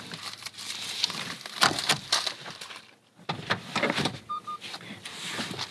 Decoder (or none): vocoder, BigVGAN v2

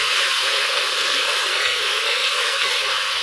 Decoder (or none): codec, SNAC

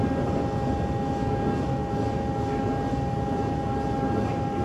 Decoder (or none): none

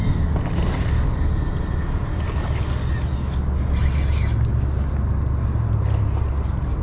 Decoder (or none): none